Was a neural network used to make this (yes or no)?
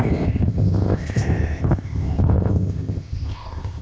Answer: yes